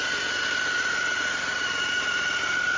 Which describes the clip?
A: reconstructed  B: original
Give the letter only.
B